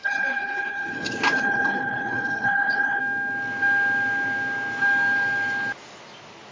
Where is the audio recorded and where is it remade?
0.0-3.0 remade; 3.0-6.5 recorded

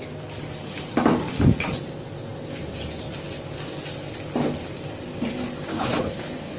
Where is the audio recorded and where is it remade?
0.0-5.7 recorded; 5.7-6.6 remade

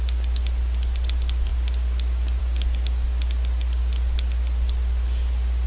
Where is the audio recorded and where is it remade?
0.0-5.7 recorded

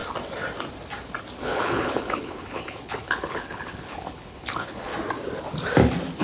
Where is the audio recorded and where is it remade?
0.0-1.4 recorded; 1.4-4.9 remade; 4.9-6.2 recorded

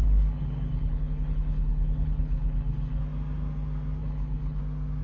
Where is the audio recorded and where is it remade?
0.0-3.0 remade; 3.0-4.0 recorded; 4.0-4.6 remade; 4.6-5.0 recorded

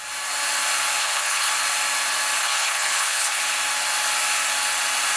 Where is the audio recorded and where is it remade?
0.0-1.0 recorded; 1.0-1.5 remade; 1.5-2.4 recorded; 2.4-3.4 remade; 3.4-5.2 recorded